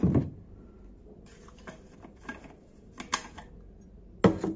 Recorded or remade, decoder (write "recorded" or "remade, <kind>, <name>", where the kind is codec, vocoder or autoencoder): recorded